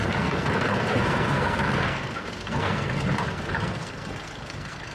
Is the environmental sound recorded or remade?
remade